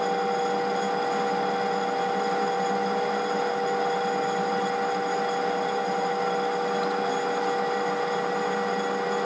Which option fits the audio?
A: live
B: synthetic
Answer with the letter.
A